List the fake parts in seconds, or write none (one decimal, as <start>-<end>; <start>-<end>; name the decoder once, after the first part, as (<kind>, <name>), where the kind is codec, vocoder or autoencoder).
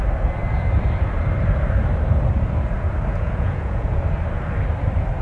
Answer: 3.1-4.0 (vocoder, Vocos)